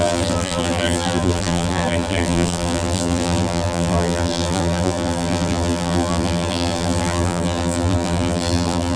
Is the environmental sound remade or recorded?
remade